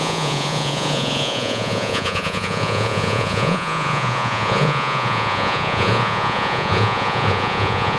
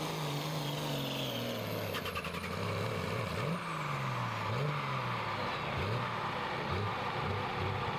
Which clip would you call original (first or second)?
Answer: second